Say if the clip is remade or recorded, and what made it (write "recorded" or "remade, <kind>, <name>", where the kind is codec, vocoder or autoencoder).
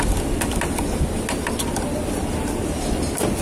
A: recorded